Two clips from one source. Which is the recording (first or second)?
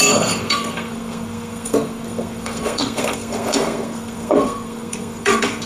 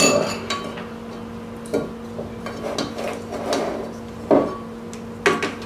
second